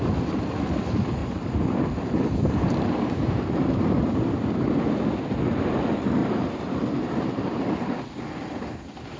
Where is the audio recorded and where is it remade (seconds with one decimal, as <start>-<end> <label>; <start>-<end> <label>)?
0.0-1.2 recorded; 1.2-4.9 remade; 4.9-6.2 recorded; 6.2-8.1 remade; 8.1-9.2 recorded